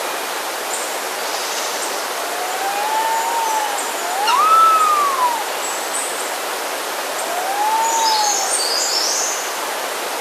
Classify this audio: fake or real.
real